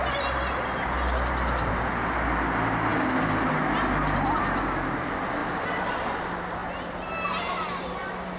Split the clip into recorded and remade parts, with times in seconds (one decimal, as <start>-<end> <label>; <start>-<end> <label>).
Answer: 0.0-5.4 recorded; 5.4-6.1 remade; 6.1-8.4 recorded

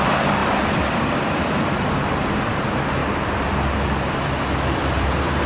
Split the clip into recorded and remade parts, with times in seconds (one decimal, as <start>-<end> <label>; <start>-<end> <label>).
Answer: 0.0-3.0 remade; 3.0-4.1 recorded; 4.1-5.5 remade

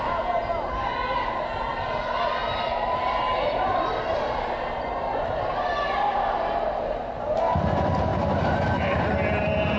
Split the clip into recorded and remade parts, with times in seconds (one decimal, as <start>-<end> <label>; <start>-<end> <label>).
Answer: 0.0-2.4 recorded; 2.4-5.7 remade; 5.7-8.1 recorded; 8.1-9.4 remade; 9.4-9.8 recorded

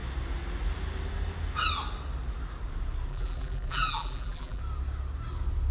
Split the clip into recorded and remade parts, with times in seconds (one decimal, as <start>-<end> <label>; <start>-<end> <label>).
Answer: 0.0-3.1 recorded; 3.1-4.6 remade; 4.6-5.7 recorded

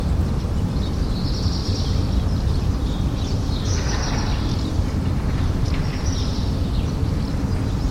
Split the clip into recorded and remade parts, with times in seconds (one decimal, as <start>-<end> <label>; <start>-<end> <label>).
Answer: 0.0-1.6 recorded; 1.6-2.7 remade; 2.7-5.1 recorded; 5.1-6.4 remade; 6.4-7.9 recorded

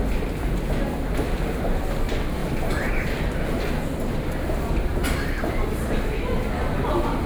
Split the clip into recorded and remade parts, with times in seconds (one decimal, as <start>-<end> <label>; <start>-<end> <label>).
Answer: 0.0-2.4 recorded; 2.4-3.6 remade; 3.6-7.3 recorded